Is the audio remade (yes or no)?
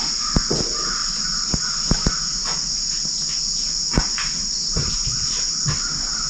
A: no